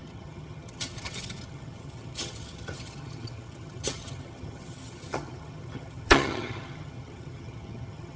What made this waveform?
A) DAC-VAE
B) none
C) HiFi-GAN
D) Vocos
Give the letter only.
C